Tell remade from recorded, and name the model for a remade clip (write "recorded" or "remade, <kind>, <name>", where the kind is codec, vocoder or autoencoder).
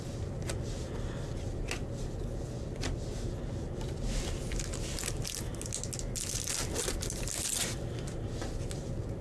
recorded